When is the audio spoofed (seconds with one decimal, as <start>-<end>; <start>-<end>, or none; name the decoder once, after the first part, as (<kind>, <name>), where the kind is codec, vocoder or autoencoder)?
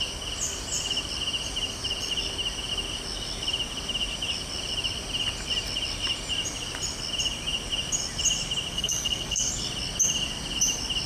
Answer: 8.7-9.5 (codec, SNAC)